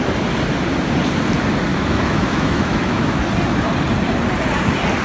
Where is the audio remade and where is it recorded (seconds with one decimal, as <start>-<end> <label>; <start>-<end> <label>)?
0.0-1.7 recorded; 1.7-3.2 remade; 3.2-5.0 recorded